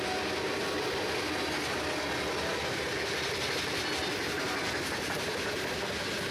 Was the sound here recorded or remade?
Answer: recorded